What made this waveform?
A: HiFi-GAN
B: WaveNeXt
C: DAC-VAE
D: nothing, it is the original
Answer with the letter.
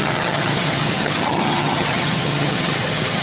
A